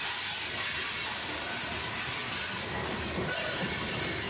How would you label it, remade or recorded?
recorded